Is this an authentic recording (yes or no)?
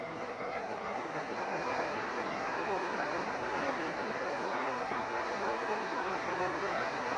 no